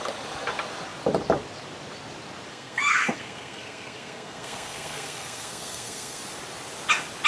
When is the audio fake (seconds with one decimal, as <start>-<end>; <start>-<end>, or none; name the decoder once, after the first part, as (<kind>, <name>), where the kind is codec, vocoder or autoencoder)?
2.5-6.2 (codec, SNAC)